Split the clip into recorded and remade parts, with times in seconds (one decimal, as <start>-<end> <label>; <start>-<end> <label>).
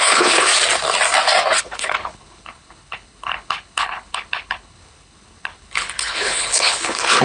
0.0-0.5 remade; 0.5-1.6 recorded; 1.6-7.2 remade